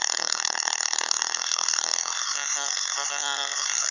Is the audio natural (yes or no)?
no